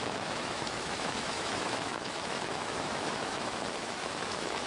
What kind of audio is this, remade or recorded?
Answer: remade